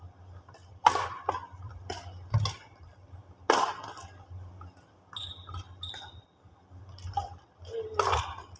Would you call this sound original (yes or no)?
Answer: yes